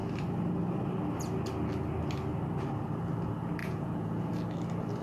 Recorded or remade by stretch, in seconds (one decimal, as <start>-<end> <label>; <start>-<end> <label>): 0.0-3.6 recorded; 3.6-4.3 remade; 4.3-5.0 recorded

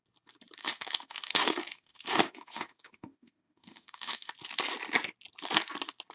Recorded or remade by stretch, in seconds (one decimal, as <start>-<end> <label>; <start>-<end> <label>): 0.0-0.6 recorded; 0.6-4.3 remade; 4.3-6.1 recorded

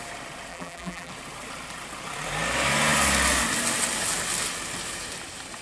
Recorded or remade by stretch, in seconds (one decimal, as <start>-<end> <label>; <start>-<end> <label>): 0.0-0.5 recorded; 0.5-1.1 remade; 1.1-5.6 recorded

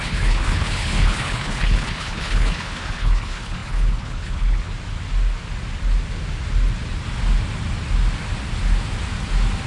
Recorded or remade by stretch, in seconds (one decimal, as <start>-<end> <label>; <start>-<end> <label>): 0.0-4.7 remade; 4.7-9.7 recorded